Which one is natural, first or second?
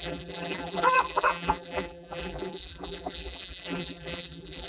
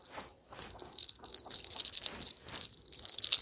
second